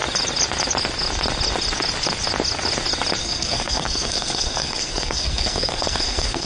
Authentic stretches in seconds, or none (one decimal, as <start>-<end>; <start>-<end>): 0.0-3.2